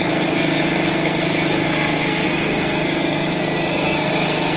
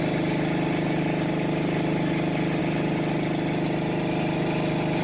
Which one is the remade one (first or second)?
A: first